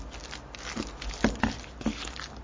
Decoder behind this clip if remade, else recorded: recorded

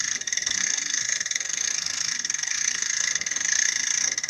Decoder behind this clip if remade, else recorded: remade, codec, SNAC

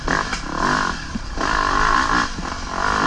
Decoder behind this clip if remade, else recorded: recorded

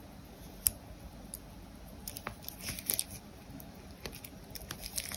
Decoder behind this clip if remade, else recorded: recorded